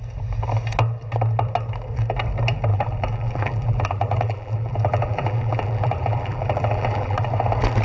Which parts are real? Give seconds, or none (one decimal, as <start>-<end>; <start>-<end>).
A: 0.0-2.7; 7.3-7.8